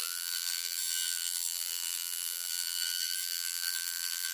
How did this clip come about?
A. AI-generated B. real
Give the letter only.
A